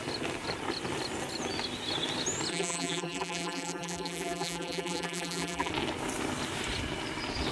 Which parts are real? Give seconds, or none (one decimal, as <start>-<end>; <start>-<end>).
0.0-2.5; 5.7-7.5